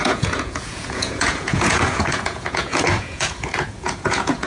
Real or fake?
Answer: fake